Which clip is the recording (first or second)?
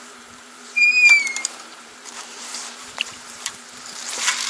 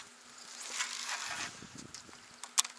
second